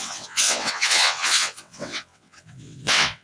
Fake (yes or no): yes